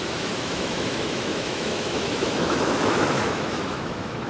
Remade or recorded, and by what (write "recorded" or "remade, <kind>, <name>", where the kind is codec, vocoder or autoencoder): remade, autoencoder, DAC-VAE